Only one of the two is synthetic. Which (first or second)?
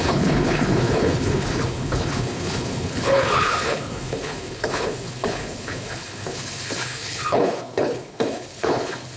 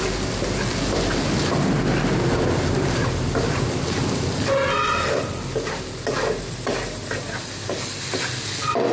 first